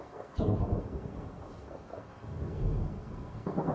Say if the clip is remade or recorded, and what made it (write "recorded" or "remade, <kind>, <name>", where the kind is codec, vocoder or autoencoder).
remade, codec, SNAC